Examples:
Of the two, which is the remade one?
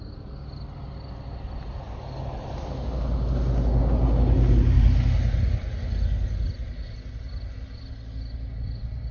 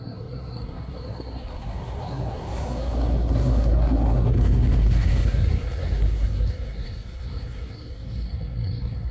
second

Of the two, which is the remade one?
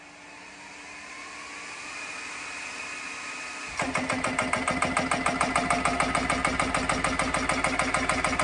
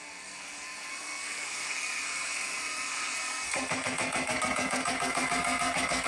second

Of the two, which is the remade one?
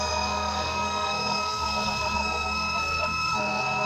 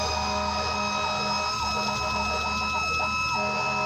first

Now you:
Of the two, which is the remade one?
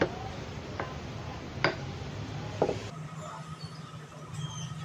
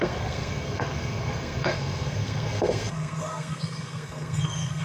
second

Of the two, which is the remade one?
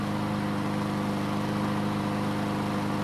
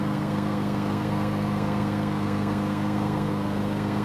second